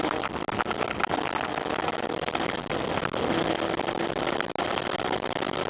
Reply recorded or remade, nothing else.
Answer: recorded